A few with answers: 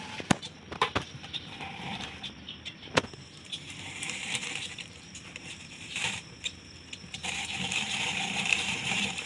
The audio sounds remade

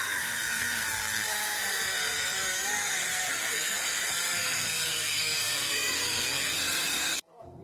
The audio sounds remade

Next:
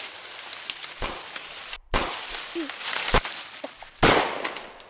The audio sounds recorded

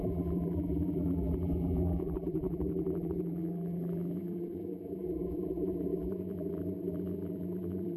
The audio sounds remade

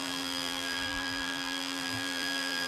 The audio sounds remade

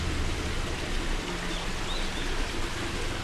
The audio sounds recorded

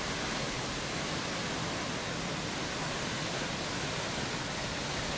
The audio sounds recorded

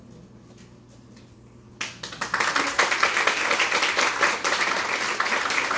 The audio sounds recorded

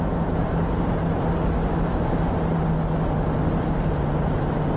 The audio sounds recorded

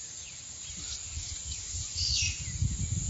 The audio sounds recorded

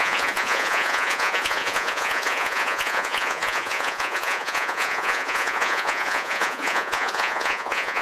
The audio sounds remade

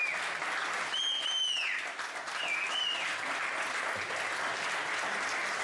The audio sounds recorded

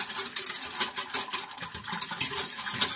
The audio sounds recorded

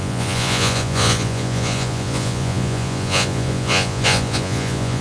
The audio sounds remade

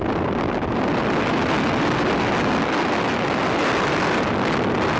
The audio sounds recorded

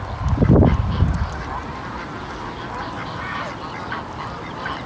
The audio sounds recorded